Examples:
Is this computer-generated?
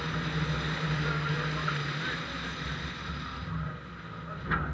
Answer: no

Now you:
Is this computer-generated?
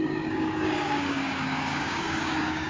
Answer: yes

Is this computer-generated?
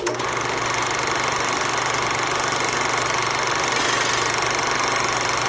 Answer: no